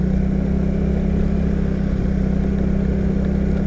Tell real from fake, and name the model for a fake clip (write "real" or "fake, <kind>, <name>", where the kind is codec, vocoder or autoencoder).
real